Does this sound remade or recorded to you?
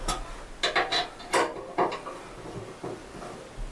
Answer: recorded